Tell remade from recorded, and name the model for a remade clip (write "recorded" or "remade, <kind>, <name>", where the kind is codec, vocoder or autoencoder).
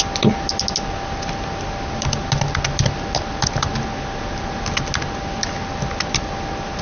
recorded